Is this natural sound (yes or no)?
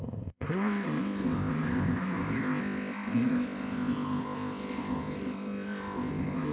no